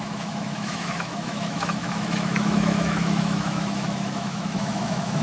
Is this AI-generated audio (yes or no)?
yes